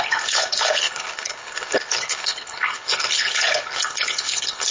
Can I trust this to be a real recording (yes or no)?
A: no